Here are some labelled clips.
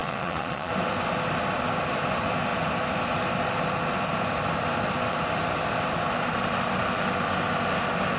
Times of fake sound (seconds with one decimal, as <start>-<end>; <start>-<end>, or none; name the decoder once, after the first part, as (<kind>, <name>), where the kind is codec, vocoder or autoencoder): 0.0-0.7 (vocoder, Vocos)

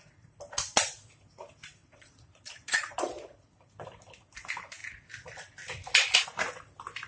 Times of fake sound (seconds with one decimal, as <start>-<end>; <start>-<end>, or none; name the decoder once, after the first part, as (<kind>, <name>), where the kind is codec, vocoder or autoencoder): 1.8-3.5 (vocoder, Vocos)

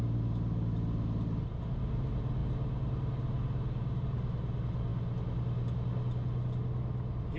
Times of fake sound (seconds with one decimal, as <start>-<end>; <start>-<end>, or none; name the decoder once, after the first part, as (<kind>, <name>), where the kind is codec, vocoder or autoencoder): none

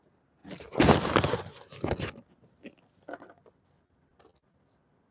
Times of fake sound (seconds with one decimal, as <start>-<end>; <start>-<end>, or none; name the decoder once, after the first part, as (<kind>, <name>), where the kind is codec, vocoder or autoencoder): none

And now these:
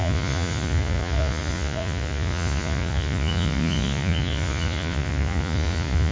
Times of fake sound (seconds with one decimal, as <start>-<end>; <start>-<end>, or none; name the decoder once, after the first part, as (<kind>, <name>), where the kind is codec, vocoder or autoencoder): 0.0-6.1 (vocoder, Vocos)

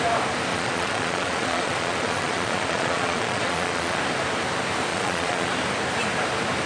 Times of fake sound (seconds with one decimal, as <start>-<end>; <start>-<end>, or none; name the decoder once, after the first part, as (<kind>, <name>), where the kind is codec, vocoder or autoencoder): 0.5-4.0 (vocoder, Vocos); 4.9-5.5

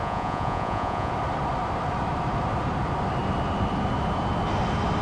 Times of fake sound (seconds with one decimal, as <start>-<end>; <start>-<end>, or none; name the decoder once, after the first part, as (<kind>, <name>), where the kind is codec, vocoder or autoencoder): 0.0-1.1 (vocoder, Vocos)

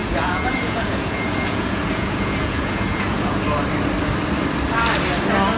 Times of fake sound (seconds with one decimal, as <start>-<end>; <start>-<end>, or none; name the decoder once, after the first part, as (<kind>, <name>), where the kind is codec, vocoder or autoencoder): 0.0-3.4 (vocoder, Vocos)